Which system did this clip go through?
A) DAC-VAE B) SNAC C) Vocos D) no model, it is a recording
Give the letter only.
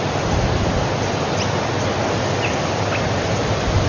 D